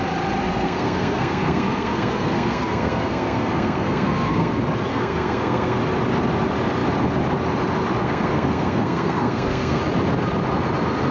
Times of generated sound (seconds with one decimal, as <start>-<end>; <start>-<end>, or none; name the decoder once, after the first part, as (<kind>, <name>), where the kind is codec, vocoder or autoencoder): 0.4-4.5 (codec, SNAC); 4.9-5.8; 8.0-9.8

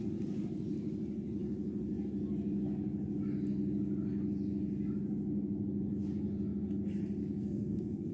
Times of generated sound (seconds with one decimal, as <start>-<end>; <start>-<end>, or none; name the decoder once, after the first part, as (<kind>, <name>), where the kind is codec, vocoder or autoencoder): 7.2-8.1 (codec, SNAC)

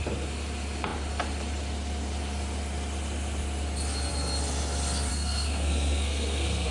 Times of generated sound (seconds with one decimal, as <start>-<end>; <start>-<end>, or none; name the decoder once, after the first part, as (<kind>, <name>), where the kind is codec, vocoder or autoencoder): 5.1-6.7 (codec, SNAC)

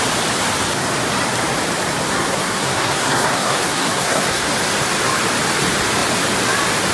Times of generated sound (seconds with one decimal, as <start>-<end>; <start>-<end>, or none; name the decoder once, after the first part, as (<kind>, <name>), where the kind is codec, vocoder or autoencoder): 2.1-4.5 (codec, SNAC)

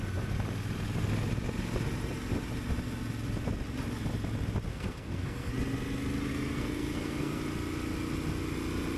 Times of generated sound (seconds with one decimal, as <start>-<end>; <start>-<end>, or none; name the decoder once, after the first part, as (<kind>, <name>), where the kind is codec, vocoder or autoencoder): 4.7-5.5 (codec, SNAC); 6.3-7.4

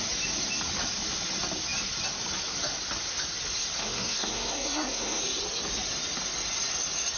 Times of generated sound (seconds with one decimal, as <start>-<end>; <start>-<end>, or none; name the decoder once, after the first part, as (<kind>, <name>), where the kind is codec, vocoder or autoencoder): 3.8-5.2 (codec, SNAC)

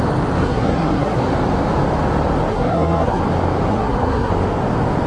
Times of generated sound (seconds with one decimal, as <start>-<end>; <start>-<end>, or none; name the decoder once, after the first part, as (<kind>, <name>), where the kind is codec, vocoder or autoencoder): 0.4-1.2 (codec, SNAC); 2.5-3.2; 3.7-4.3